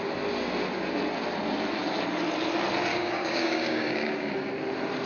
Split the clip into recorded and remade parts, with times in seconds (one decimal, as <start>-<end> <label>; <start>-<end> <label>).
0.0-2.9 recorded; 2.9-4.3 remade; 4.3-5.1 recorded